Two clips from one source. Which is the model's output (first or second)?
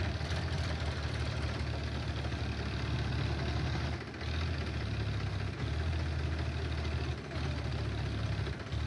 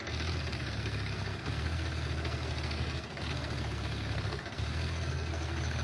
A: second